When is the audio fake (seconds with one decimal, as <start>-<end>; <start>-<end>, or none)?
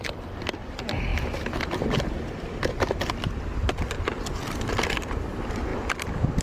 none